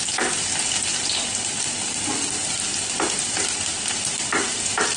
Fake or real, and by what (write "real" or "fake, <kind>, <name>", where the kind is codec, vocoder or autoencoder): real